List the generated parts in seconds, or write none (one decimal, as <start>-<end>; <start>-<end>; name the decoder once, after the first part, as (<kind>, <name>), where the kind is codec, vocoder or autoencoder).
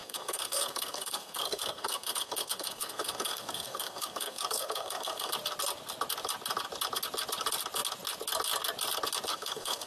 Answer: 0.0-5.3 (codec, SNAC); 9.3-9.9